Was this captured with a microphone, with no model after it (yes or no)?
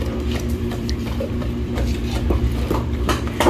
no